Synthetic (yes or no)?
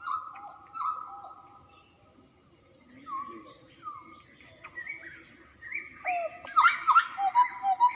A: no